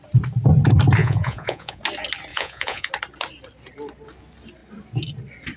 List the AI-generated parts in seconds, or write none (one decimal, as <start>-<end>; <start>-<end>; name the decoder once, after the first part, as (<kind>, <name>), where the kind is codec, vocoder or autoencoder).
1.0-1.8 (vocoder, Vocos); 2.3-2.9